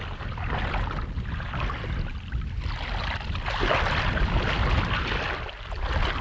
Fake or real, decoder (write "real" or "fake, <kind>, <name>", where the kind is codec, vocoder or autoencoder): real